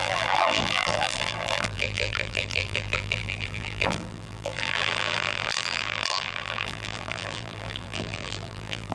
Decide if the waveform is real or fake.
fake